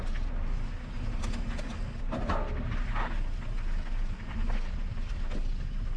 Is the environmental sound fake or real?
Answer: real